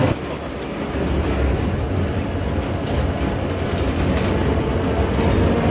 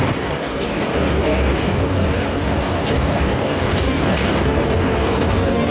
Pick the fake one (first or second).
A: second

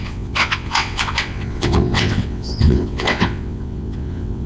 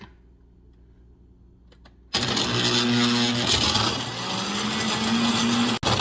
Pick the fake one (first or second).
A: first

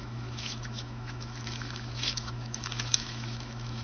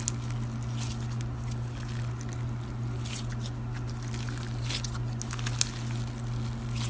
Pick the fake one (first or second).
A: first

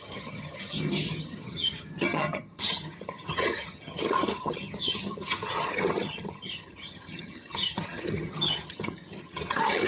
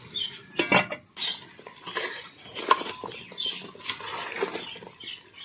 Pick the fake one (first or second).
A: first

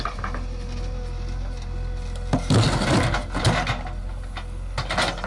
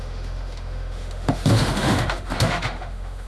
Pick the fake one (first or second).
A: second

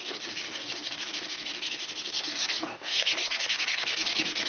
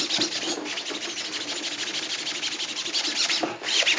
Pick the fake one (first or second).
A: first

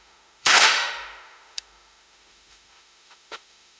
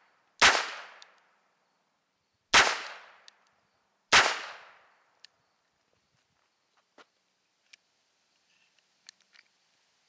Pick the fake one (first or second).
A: first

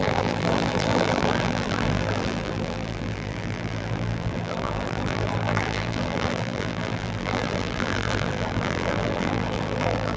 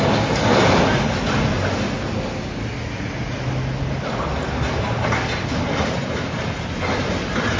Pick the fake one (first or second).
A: first